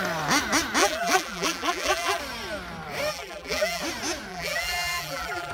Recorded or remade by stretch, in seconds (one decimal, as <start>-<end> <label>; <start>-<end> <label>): 0.0-0.8 recorded; 0.8-2.2 remade; 2.2-3.1 recorded; 3.1-3.8 remade; 3.8-4.3 recorded; 4.3-5.5 remade